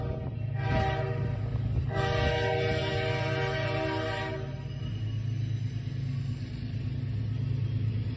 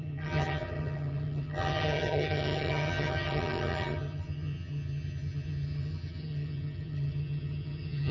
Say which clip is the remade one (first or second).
second